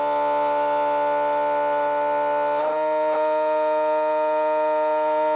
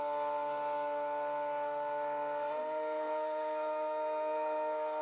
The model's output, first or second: second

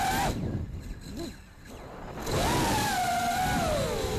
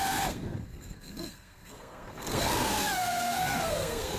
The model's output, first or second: second